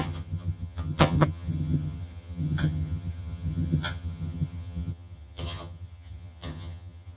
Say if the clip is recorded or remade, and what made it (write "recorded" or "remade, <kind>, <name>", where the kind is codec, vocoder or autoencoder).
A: remade, vocoder, HiFi-GAN